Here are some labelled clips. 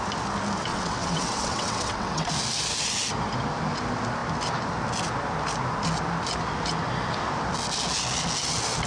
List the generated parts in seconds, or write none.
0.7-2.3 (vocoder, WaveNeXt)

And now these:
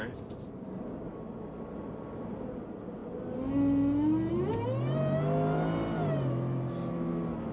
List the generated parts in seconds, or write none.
none

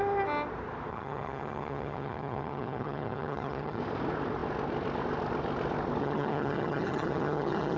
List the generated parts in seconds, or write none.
0.9-3.8 (vocoder, HiFi-GAN); 6.0-7.8

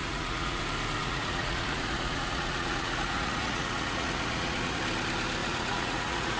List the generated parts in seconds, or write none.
0.0-0.6 (vocoder, Vocos); 1.0-4.8; 5.4-6.4

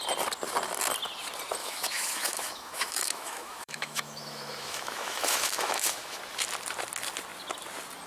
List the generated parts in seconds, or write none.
1.6-6.2 (autoencoder, DAC-VAE)